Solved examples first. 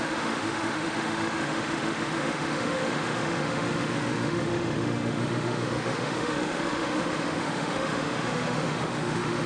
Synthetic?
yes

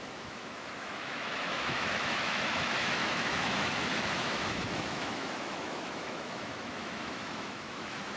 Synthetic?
yes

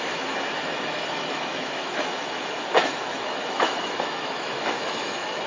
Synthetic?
yes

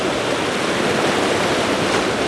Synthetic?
no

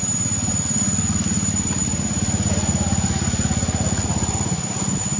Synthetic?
no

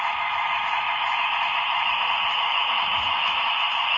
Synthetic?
yes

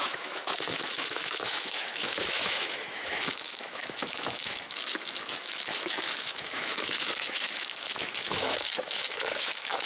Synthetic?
yes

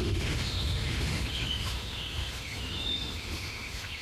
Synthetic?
yes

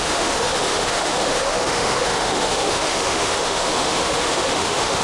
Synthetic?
yes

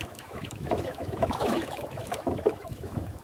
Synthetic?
yes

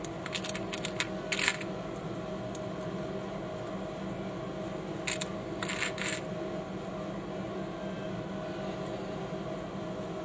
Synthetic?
no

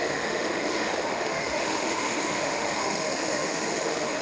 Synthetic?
yes